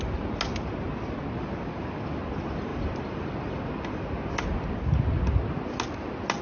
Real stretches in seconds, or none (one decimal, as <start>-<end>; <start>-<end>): 0.0-2.7; 4.3-6.4